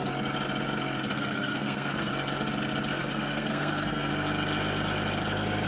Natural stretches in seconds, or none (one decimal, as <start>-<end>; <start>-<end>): 0.0-1.1; 2.1-3.0; 4.1-5.7

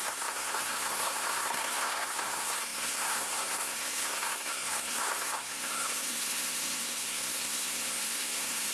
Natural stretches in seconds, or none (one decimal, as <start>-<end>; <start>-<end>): none

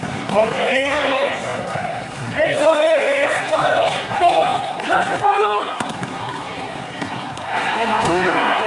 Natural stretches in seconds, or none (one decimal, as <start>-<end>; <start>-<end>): none